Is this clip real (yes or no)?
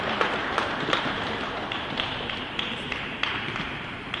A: no